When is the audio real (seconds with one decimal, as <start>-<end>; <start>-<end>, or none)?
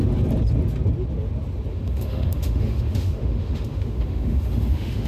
0.0-1.7